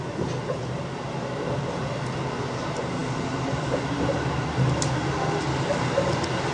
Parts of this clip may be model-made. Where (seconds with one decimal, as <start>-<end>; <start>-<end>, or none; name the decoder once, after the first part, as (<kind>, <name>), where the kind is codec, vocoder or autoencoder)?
none